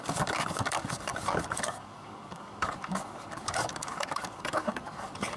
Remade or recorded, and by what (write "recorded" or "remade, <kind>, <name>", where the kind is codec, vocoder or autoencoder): remade, codec, DAC